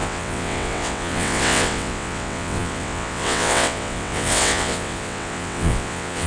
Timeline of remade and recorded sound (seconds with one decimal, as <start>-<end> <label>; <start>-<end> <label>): 0.0-6.3 remade